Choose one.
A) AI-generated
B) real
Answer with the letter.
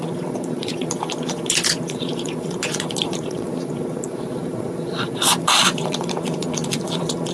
A